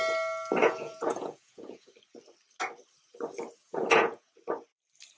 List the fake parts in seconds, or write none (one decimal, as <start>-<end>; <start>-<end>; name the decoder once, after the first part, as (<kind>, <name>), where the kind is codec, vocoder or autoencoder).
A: 0.6-1.9 (vocoder, Vocos); 3.6-4.3